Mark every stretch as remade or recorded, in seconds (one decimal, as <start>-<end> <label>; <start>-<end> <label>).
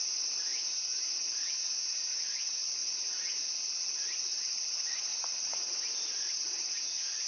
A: 0.0-5.1 recorded; 5.1-5.7 remade; 5.7-7.3 recorded